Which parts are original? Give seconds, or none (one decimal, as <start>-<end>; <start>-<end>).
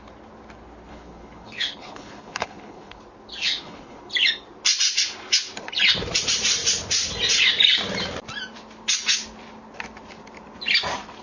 0.0-0.9; 3.0-3.4; 4.1-11.2